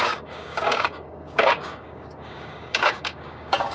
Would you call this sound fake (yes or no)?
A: yes